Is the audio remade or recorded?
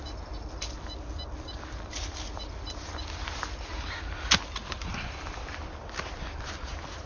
recorded